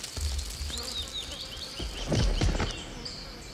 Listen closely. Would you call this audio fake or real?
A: real